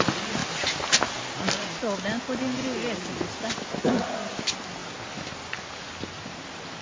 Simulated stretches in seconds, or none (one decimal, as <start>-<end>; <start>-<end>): none